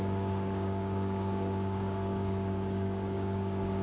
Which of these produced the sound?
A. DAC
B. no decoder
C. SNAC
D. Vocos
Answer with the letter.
A